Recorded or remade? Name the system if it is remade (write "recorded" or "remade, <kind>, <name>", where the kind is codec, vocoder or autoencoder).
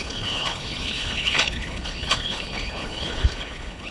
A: remade, codec, HILCodec